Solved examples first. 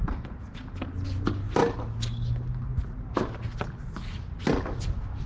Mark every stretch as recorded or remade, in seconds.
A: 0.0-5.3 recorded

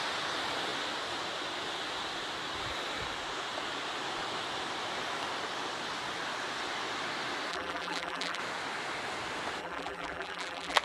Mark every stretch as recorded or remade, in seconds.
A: 0.0-7.5 recorded; 7.5-8.4 remade; 8.4-9.6 recorded; 9.6-10.8 remade

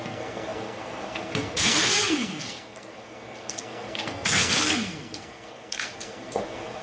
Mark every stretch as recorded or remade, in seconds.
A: 0.0-6.8 remade

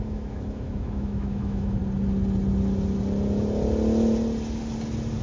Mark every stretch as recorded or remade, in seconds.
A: 0.0-1.8 remade; 1.8-5.2 recorded

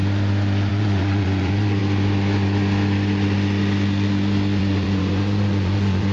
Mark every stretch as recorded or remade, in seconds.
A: 0.0-0.7 recorded; 0.7-1.8 remade; 1.8-4.6 recorded; 4.6-6.1 remade

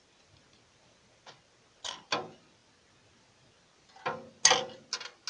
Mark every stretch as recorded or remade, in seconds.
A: 0.0-5.3 recorded

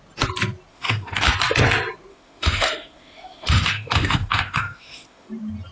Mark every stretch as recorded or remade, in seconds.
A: 0.0-0.7 recorded; 0.7-1.3 remade; 1.3-2.1 recorded; 2.1-5.3 remade; 5.3-5.7 recorded